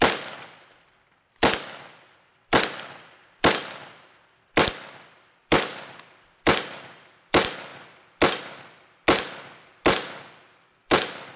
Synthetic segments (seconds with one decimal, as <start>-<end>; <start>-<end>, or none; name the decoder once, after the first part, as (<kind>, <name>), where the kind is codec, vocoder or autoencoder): 0.0-7.7 (vocoder, BigVGAN v2); 10.2-11.4